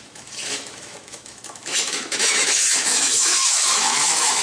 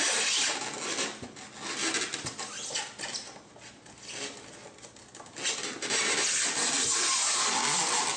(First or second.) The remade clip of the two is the first